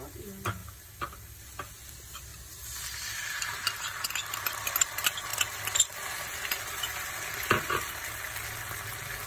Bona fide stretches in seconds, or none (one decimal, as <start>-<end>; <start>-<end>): 0.0-9.3